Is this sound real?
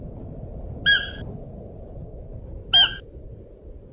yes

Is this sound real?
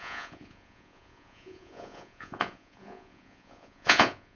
no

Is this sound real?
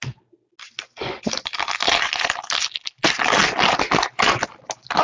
yes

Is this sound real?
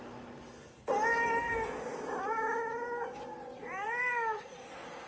yes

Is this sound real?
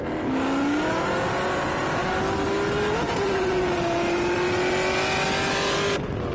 yes